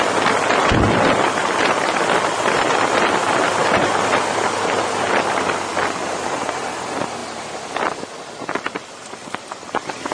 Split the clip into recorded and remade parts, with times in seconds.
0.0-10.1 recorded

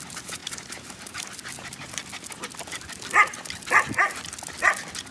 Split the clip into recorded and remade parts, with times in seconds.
0.0-2.0 remade; 2.0-5.1 recorded

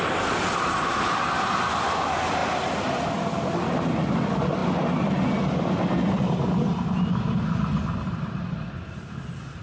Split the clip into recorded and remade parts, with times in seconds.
0.0-9.6 recorded

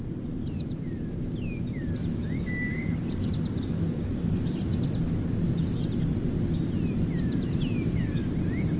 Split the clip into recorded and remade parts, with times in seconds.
0.0-5.6 remade; 5.6-6.2 recorded; 6.2-8.8 remade

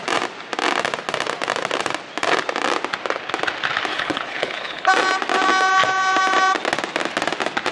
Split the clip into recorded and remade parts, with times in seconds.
0.0-3.9 recorded; 3.9-4.9 remade; 4.9-7.7 recorded

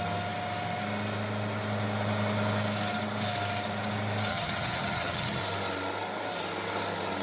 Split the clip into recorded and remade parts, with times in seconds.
0.0-4.3 recorded; 4.3-5.4 remade; 5.4-7.2 recorded

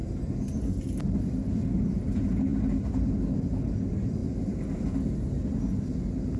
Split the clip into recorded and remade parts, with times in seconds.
0.0-6.4 recorded

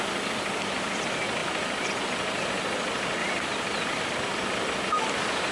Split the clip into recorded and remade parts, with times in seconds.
0.0-1.4 recorded; 1.4-1.9 remade; 1.9-3.2 recorded; 3.2-4.2 remade; 4.2-5.5 recorded